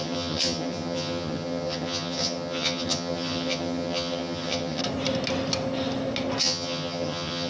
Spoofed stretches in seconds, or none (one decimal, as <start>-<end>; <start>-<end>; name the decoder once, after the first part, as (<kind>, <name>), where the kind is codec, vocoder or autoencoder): 0.0-4.8 (vocoder, HiFi-GAN); 6.4-7.5